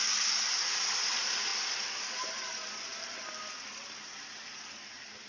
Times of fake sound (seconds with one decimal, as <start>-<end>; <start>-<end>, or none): none